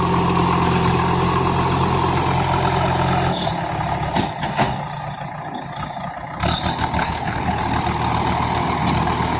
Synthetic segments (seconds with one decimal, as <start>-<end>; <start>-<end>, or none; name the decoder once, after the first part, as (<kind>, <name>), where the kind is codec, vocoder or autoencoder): 7.0-7.6 (codec, HILCodec)